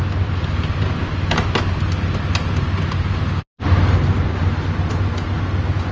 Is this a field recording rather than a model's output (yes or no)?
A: yes